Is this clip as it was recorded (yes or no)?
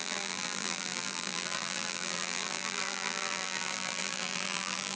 no